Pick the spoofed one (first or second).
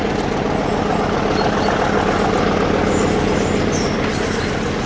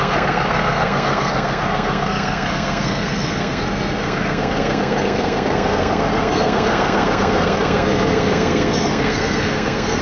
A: second